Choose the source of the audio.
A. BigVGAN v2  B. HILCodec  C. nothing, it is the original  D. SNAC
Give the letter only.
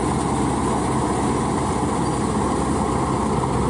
C